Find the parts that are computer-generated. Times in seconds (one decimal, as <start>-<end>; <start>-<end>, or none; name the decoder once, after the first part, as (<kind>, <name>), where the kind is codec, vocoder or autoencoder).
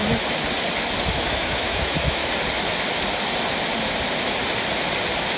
1.1-2.2 (autoencoder, DAC-VAE)